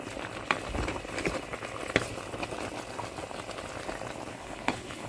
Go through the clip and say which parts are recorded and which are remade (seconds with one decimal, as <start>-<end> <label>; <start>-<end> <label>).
0.0-4.3 recorded; 4.3-5.1 remade